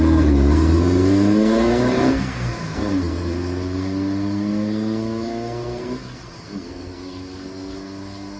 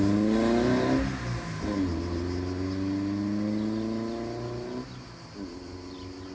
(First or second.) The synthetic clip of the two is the first